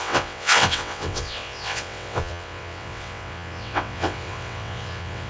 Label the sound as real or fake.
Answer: fake